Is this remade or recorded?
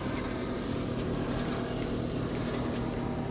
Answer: recorded